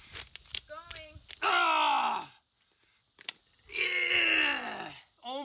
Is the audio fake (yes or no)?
no